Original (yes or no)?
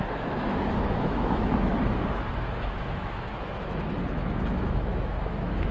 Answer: no